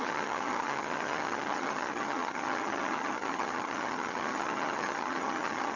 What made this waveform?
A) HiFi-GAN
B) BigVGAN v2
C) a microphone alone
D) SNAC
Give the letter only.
A